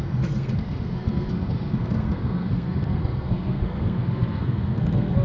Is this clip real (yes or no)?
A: no